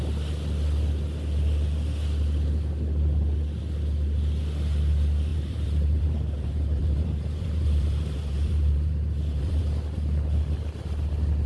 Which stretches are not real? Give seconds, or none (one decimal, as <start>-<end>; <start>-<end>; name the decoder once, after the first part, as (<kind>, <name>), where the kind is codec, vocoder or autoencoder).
5.3-9.6 (vocoder, BigVGAN v2)